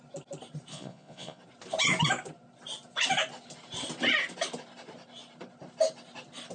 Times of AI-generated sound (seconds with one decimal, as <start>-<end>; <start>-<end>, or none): 0.7-1.4